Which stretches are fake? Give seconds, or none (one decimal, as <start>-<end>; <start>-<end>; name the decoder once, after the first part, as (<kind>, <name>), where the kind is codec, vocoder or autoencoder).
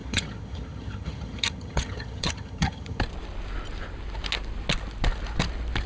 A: 0.0-3.0 (vocoder, HiFi-GAN)